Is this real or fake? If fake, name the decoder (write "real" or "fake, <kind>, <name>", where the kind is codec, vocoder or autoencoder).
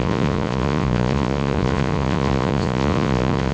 fake, vocoder, Vocos